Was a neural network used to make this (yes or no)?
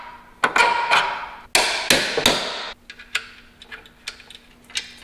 no